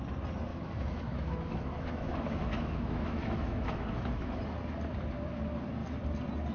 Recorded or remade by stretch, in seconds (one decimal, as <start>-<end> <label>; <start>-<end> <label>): 0.0-0.5 recorded; 0.5-4.4 remade; 4.4-6.5 recorded